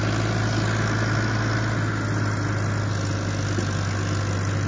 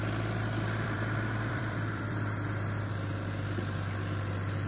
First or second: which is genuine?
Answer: first